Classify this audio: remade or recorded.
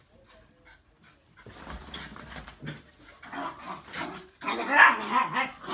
recorded